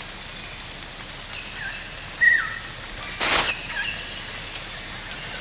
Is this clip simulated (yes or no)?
no